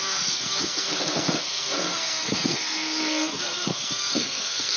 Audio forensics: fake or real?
fake